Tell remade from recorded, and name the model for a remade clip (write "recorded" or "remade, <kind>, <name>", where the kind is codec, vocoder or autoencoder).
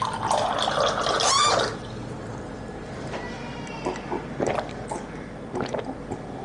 recorded